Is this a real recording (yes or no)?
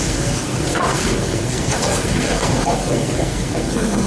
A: no